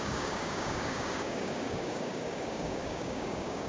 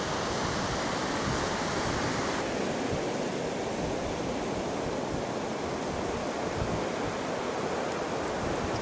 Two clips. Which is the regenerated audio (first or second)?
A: first